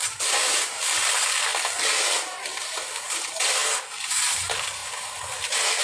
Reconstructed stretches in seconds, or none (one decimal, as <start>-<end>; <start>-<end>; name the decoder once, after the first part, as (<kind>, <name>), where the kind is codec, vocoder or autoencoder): 0.0-3.6 (vocoder, BigVGAN v2); 4.2-4.8

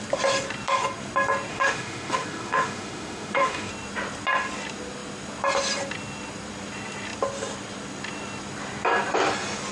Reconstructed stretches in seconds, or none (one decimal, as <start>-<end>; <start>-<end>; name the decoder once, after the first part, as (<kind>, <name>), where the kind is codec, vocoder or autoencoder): 1.5-3.7 (autoencoder, DAC-VAE)

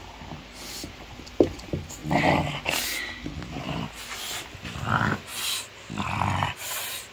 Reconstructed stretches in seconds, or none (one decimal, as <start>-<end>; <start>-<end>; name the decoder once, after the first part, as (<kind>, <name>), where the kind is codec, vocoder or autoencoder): none

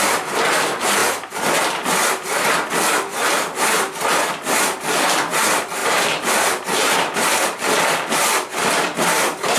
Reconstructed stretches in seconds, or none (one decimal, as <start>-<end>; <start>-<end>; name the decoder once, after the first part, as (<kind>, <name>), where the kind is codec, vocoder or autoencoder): none

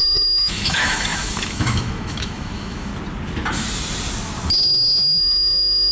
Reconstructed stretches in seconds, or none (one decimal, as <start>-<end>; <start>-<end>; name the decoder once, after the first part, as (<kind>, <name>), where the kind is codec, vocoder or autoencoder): 0.0-2.9 (autoencoder, DAC-VAE); 5.2-5.9

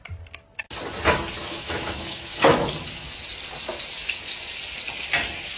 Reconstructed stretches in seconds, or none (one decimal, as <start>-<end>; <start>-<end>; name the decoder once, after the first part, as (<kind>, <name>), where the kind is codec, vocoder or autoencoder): 1.4-2.7 (autoencoder, DAC-VAE)

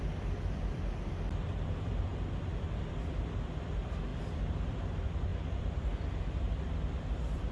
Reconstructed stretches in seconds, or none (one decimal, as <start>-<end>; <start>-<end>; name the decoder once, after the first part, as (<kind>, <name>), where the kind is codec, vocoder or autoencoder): 0.0-2.1 (vocoder, BigVGAN v2); 2.6-7.5

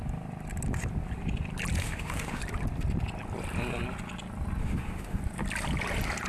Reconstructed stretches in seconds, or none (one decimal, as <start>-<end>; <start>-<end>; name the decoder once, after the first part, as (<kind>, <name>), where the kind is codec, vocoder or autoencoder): 1.8-2.4 (autoencoder, DAC-VAE); 4.6-5.2